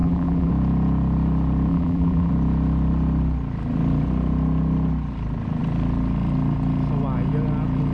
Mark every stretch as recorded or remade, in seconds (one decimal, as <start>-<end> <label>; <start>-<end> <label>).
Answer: 0.0-0.5 remade; 0.5-1.7 recorded; 1.7-2.3 remade; 2.3-7.9 recorded